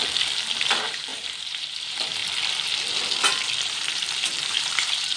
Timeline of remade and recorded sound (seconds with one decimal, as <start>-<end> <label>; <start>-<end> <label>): 0.0-0.7 recorded; 0.7-2.2 remade; 2.2-3.7 recorded; 3.7-5.2 remade